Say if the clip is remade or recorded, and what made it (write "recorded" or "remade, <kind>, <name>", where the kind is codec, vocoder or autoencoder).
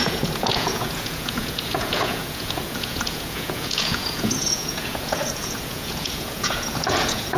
remade, vocoder, Vocos